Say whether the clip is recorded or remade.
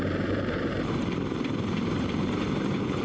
remade